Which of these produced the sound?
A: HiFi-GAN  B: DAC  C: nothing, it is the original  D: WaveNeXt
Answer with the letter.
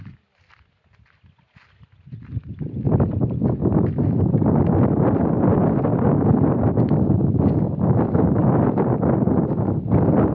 C